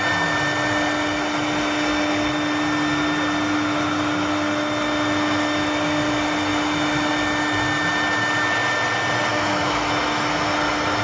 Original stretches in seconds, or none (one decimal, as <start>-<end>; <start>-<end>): 0.0-9.3; 9.9-11.0